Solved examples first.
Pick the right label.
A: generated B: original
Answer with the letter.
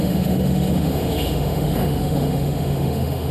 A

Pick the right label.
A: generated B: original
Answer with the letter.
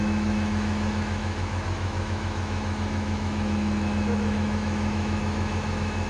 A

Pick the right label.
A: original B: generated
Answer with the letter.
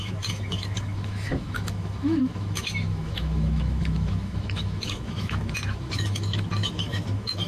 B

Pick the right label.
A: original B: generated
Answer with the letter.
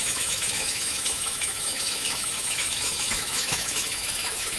B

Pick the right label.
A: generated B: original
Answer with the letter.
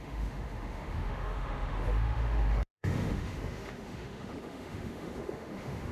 A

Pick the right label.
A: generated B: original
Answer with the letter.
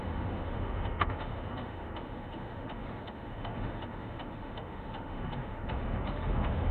A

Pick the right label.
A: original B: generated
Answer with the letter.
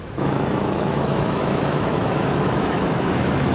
B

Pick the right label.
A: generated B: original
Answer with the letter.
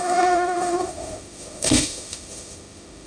A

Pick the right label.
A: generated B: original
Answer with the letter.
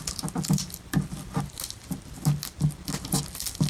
B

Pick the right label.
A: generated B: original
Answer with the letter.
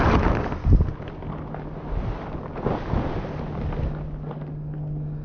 B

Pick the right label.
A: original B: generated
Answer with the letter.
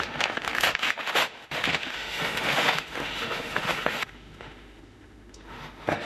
B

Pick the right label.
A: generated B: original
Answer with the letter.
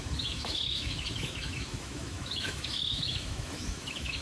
A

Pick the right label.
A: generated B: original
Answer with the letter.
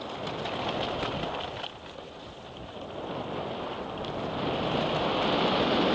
B